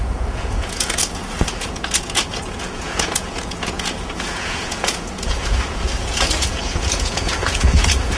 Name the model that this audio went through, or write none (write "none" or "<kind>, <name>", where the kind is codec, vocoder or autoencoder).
vocoder, Vocos